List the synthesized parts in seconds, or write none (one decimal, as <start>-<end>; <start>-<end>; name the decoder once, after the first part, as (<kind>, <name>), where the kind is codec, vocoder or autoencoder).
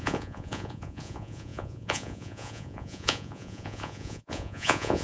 0.0-5.0 (vocoder, Vocos)